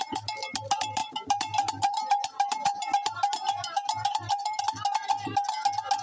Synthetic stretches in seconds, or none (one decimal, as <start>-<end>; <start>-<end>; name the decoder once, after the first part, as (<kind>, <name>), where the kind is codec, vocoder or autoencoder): 1.0-4.6 (vocoder, BigVGAN v2)

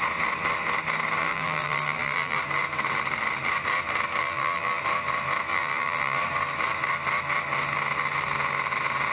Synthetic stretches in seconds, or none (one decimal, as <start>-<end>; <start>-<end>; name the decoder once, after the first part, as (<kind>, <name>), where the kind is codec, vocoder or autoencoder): 1.2-2.4 (vocoder, BigVGAN v2); 4.2-4.8; 5.5-6.2

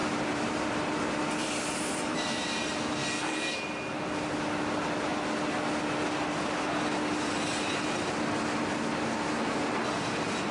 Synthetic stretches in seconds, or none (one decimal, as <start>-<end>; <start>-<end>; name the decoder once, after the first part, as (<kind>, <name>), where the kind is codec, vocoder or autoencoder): 0.0-0.7 (vocoder, BigVGAN v2); 1.4-2.7